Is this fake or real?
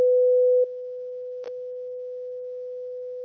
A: fake